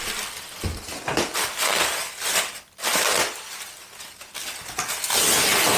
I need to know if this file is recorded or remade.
recorded